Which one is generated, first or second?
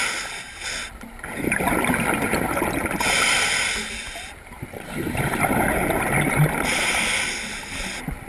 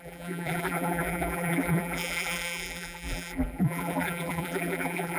second